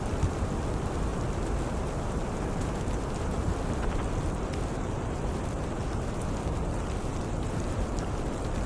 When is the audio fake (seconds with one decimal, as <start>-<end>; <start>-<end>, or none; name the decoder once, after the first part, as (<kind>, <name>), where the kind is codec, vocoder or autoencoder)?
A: none